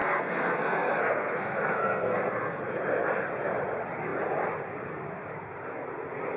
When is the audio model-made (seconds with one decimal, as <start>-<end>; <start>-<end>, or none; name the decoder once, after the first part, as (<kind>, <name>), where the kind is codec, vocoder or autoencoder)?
0.0-2.6 (codec, SNAC)